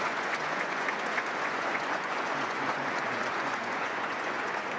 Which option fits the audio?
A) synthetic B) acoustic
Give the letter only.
A